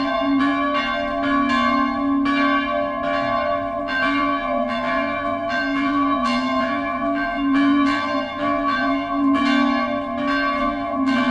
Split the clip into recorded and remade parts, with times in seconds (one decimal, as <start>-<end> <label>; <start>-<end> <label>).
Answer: 0.0-0.5 remade; 0.5-3.8 recorded; 3.8-9.4 remade; 9.4-10.6 recorded; 10.6-11.3 remade